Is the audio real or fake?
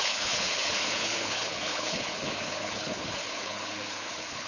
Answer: fake